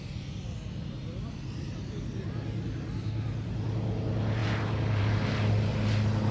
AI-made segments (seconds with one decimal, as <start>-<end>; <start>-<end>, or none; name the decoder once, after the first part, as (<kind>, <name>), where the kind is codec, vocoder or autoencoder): 1.0-2.0 (vocoder, BigVGAN v2)